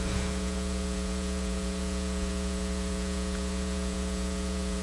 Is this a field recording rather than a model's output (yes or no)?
no